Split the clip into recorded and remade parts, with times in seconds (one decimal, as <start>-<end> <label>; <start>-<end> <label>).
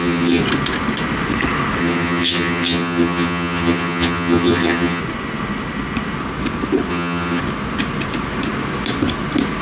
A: 0.0-0.4 remade; 0.4-1.8 recorded; 1.8-5.0 remade; 5.0-6.9 recorded; 6.9-7.4 remade; 7.4-9.6 recorded